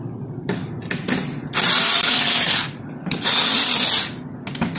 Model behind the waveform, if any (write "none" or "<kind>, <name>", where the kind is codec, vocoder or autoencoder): none